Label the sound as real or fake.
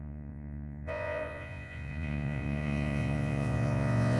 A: fake